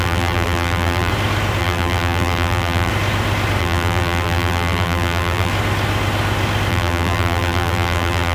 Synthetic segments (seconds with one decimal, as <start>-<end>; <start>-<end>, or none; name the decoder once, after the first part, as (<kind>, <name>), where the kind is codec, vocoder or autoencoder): 0.0-1.1 (vocoder, BigVGAN v2); 1.6-2.9; 3.6-5.5; 6.7-8.3